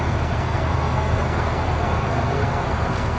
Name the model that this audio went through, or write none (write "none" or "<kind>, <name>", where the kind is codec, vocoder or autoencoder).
codec, SNAC